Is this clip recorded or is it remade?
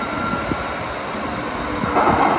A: recorded